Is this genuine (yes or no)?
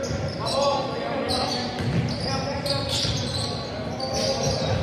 yes